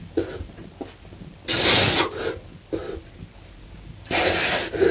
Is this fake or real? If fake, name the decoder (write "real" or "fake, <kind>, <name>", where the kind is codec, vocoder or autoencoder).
real